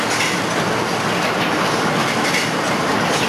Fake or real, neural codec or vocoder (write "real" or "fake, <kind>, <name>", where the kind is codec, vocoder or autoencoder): real